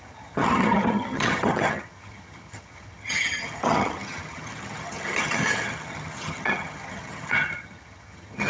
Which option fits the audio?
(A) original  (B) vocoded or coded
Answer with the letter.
B